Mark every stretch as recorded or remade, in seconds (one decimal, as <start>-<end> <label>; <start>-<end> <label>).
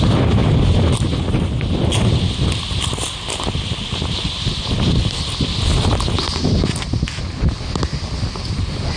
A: 0.0-9.0 recorded